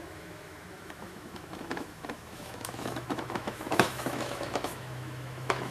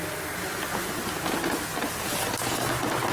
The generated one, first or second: first